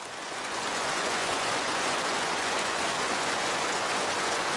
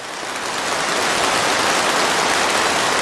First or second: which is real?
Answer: second